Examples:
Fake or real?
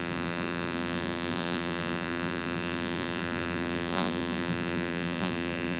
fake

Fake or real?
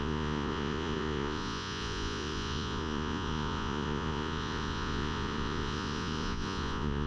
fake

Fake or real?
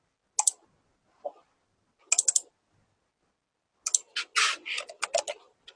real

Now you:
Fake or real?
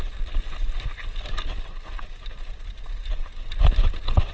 real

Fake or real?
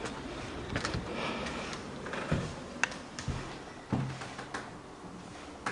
real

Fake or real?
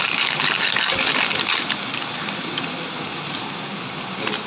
real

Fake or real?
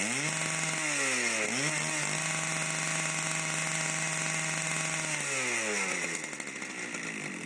real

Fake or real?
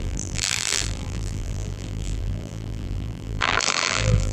fake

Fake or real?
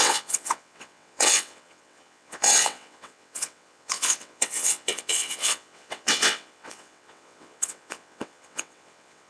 fake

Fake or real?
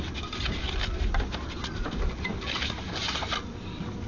real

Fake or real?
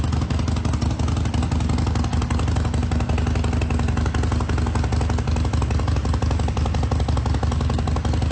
real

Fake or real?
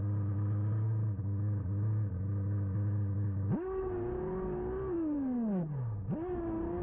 real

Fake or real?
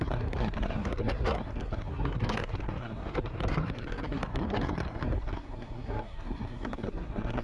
fake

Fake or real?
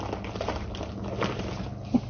real